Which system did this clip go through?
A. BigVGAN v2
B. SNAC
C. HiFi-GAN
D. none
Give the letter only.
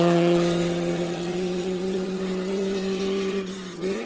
C